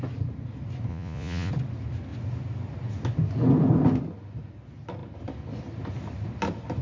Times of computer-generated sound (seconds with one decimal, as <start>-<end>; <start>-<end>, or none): 0.9-1.5